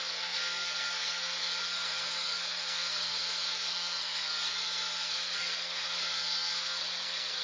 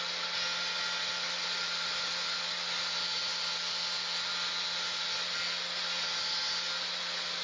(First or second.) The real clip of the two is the second